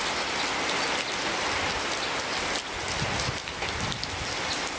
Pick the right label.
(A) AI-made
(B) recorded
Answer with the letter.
B